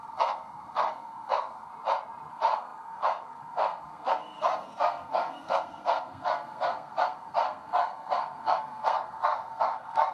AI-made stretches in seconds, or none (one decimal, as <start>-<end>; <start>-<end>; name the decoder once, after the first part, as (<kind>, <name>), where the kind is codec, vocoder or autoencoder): 0.0-1.7 (codec, SNAC); 2.3-10.1